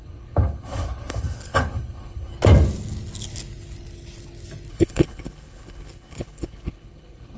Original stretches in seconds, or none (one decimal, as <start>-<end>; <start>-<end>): 2.3-4.7